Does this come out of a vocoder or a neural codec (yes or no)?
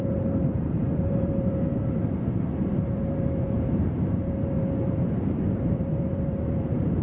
yes